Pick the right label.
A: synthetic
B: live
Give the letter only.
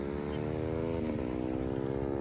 B